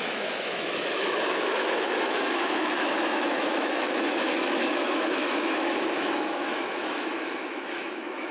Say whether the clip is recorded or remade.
remade